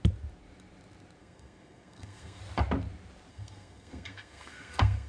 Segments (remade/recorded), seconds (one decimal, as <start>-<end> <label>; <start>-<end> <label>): 0.0-1.2 recorded; 1.2-2.4 remade; 2.4-3.3 recorded; 3.3-5.1 remade